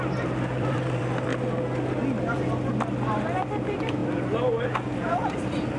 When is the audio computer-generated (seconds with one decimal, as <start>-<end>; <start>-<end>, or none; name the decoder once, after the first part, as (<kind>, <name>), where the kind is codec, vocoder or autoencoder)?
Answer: 0.0-1.3 (vocoder, BigVGAN v2); 2.3-4.0; 5.1-5.8